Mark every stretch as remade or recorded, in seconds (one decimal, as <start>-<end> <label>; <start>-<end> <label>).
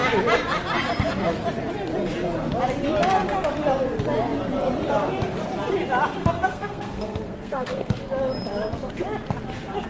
0.0-6.2 recorded; 6.2-8.0 remade; 8.0-9.9 recorded